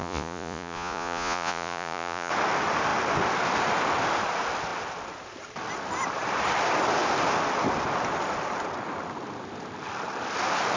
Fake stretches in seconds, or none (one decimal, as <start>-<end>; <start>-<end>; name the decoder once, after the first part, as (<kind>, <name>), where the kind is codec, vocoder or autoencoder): 0.0-2.3 (vocoder, Vocos)